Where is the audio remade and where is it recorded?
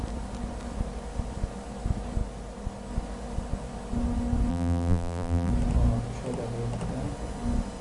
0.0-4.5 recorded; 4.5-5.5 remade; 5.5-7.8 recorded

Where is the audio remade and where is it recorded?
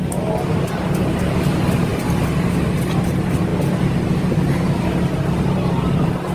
0.0-1.2 recorded; 1.2-1.9 remade; 1.9-2.7 recorded; 2.7-3.5 remade; 3.5-4.2 recorded; 4.2-6.3 remade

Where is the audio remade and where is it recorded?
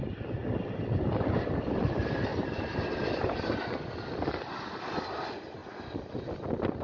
0.0-0.4 remade; 0.4-1.0 recorded; 1.0-2.3 remade; 2.3-4.7 recorded; 4.7-5.6 remade; 5.6-6.2 recorded; 6.2-6.8 remade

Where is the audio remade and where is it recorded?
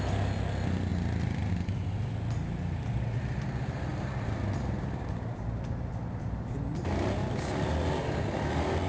0.0-8.9 recorded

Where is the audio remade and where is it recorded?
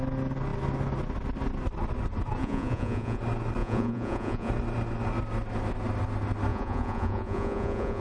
0.0-2.4 recorded; 2.4-3.2 remade; 3.2-3.6 recorded; 3.6-4.5 remade; 4.5-6.5 recorded; 6.5-8.0 remade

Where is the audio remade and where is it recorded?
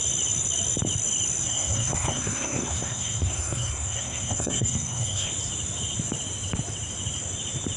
0.0-1.4 recorded; 1.4-5.3 remade; 5.3-7.8 recorded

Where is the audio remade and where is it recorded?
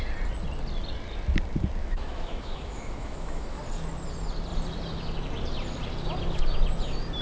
0.0-1.8 recorded; 1.8-3.6 remade; 3.6-7.2 recorded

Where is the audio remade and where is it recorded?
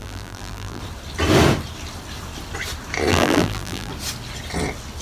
0.0-0.8 remade; 0.8-3.1 recorded; 3.1-3.9 remade; 3.9-5.0 recorded